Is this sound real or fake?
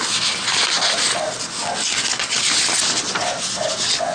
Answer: real